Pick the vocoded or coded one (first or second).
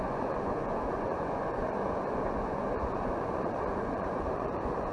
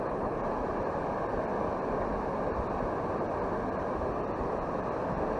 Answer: first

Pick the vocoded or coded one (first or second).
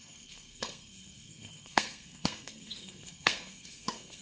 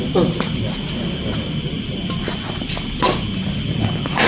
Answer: first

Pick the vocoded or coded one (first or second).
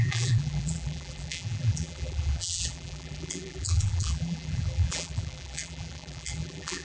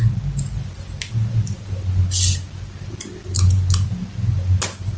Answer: first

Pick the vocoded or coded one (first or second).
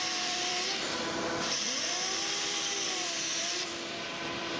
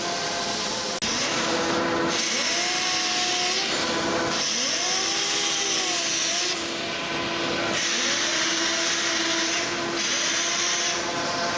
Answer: first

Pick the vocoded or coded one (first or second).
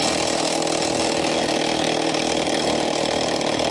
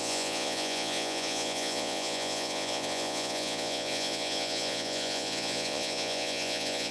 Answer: second